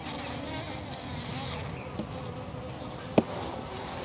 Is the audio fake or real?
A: real